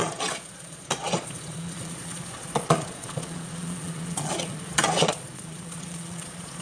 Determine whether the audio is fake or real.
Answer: fake